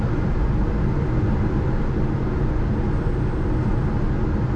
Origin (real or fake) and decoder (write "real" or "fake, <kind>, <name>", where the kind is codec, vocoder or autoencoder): real